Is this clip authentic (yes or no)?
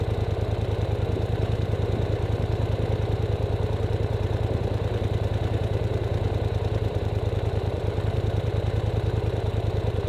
no